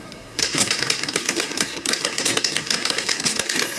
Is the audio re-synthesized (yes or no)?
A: yes